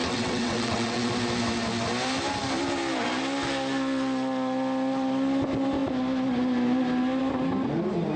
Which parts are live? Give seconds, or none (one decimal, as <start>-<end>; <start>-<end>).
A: 1.1-8.2